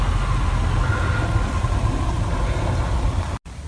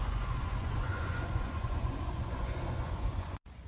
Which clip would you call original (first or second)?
first